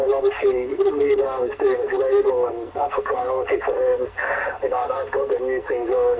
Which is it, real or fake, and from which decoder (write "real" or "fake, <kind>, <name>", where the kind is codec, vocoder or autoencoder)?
fake, codec, SNAC